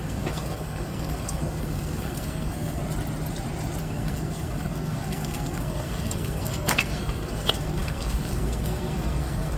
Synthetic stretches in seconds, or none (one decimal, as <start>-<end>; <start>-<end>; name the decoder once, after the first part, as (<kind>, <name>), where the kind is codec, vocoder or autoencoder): 0.0-2.8 (codec, SNAC); 3.8-9.6